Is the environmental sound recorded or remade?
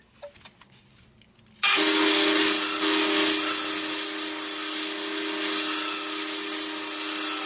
recorded